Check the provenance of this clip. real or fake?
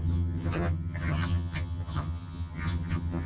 fake